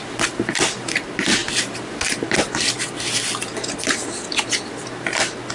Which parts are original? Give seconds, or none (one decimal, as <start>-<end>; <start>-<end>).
0.0-5.5